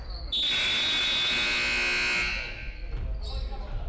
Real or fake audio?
real